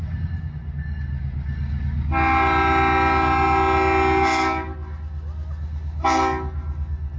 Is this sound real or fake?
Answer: real